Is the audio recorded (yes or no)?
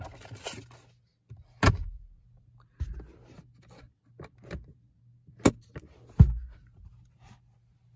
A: yes